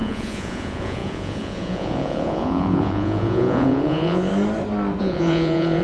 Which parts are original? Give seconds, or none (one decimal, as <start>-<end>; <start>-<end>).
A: 4.3-5.0